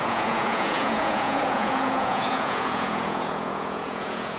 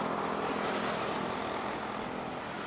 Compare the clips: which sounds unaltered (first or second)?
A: second